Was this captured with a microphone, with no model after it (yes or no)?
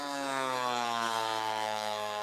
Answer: no